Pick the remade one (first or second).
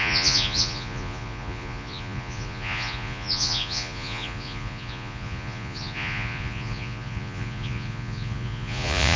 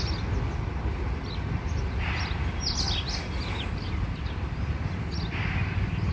first